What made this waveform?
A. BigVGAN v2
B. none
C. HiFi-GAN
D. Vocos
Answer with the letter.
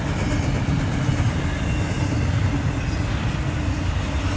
B